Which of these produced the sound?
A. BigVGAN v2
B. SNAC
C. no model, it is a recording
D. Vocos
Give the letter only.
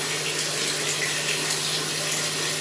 C